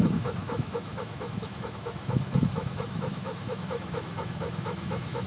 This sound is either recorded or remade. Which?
remade